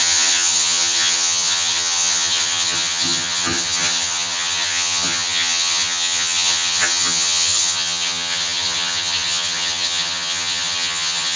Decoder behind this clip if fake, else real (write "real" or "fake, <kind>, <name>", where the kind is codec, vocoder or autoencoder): fake, vocoder, HiFi-GAN